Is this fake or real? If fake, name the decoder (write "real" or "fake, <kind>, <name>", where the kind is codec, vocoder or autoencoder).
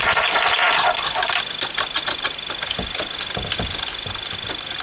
real